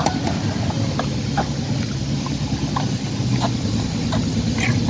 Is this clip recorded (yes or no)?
yes